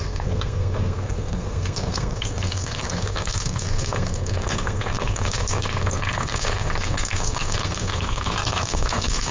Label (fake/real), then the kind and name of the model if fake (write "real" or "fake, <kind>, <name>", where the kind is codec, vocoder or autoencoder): fake, codec, SNAC